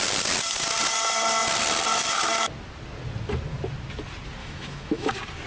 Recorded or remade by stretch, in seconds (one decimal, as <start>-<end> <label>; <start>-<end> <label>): 0.0-4.4 recorded; 4.4-5.1 remade; 5.1-5.5 recorded